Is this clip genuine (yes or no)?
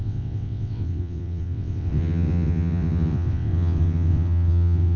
no